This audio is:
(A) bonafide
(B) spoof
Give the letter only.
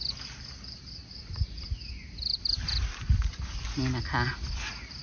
A